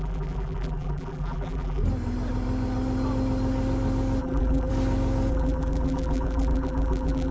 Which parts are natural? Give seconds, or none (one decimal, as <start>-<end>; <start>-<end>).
1.8-4.2; 4.7-5.3

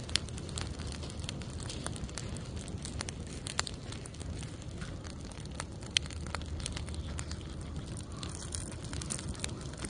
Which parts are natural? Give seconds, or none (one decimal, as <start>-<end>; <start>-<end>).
2.1-9.9

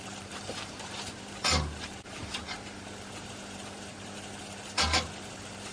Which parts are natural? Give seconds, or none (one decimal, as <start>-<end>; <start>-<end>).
none

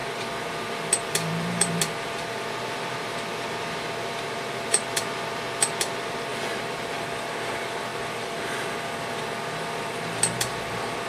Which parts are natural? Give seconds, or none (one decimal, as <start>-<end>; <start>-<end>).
none

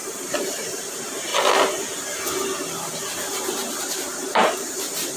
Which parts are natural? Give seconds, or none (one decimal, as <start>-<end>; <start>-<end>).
1.3-3.9

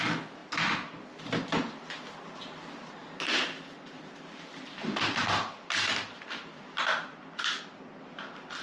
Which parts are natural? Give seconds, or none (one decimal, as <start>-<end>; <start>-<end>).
0.0-3.0; 5.7-6.5; 7.2-8.6

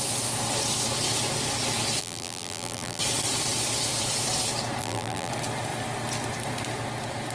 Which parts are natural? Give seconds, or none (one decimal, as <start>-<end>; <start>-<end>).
0.0-2.0; 3.0-4.8; 5.3-7.3

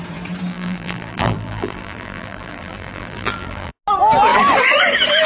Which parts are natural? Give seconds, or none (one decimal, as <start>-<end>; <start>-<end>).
0.0-0.5; 3.7-5.3